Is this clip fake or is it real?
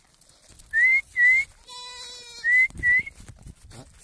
real